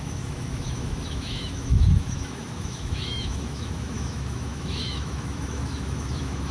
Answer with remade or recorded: remade